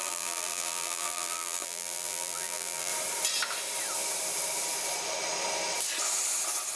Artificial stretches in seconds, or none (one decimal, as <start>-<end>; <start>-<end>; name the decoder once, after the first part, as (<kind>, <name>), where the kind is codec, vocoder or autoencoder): 0.0-2.9 (vocoder, BigVGAN v2)